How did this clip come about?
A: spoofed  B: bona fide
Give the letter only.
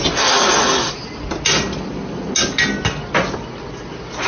B